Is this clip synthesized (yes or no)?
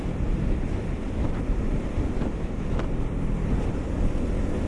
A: no